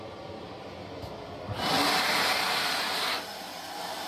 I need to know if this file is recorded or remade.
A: recorded